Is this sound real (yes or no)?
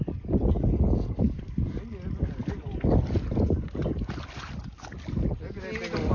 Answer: yes